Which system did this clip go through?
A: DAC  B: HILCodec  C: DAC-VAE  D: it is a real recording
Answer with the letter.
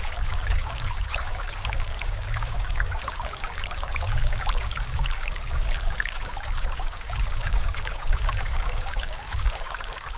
A